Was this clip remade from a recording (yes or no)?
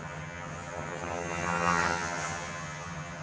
yes